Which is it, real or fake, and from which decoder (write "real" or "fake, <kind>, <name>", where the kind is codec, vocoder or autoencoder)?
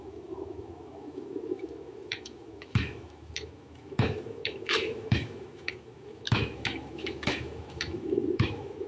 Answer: fake, autoencoder, DAC-VAE